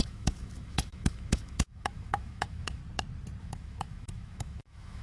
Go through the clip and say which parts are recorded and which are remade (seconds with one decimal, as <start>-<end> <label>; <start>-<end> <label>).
0.0-2.8 remade; 2.8-3.4 recorded; 3.4-5.0 remade